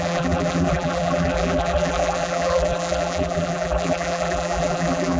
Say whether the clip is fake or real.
fake